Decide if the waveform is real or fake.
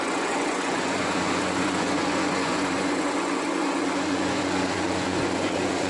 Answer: fake